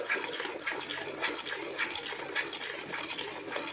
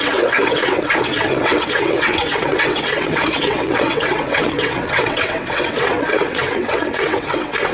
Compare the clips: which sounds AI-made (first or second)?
second